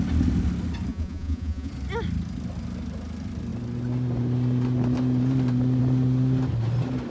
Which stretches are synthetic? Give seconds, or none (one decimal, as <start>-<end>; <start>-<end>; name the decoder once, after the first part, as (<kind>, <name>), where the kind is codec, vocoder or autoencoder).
0.9-1.7 (vocoder, Vocos)